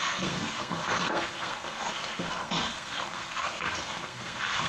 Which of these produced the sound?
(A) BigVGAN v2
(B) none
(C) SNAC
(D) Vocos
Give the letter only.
C